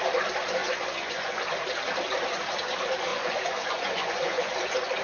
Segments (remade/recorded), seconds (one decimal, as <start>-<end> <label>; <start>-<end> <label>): 0.0-0.6 recorded; 0.6-1.4 remade; 1.4-3.1 recorded; 3.1-4.5 remade; 4.5-5.0 recorded